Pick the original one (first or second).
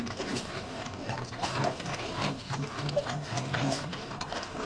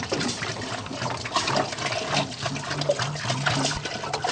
second